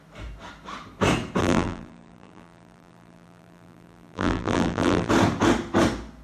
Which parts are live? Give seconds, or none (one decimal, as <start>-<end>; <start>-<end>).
0.0-1.4; 5.1-6.2